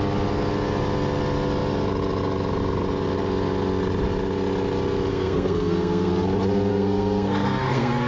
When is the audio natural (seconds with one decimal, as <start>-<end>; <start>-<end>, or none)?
0.0-5.1; 6.1-6.7

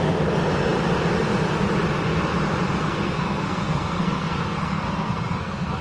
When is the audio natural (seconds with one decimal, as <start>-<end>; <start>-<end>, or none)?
0.0-2.8

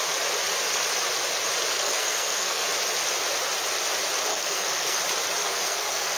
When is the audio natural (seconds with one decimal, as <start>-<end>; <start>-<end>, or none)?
0.0-1.7; 2.6-4.3; 5.0-5.4

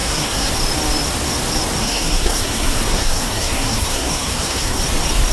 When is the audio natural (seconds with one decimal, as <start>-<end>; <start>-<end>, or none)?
0.5-1.8; 4.8-5.3

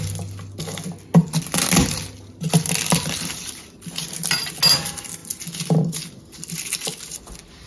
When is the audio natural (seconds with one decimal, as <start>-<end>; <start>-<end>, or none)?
0.0-7.7

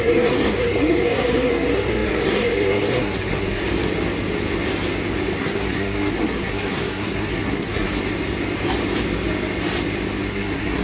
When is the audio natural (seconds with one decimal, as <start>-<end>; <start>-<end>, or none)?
3.6-5.4; 7.9-10.3

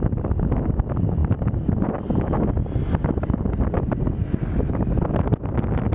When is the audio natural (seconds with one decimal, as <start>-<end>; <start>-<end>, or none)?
0.0-5.9

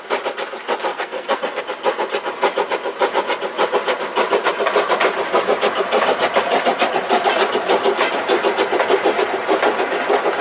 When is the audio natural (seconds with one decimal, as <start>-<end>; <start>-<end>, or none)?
0.0-0.9; 1.6-10.4